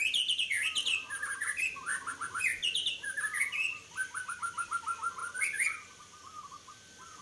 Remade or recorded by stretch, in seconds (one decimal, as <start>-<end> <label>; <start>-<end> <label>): 0.0-7.2 recorded